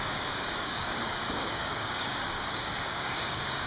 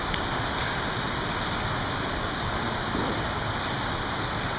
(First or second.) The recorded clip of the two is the second